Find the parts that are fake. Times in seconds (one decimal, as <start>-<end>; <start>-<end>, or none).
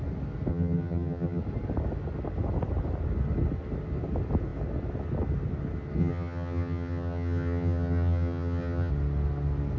0.5-1.4; 6.0-8.9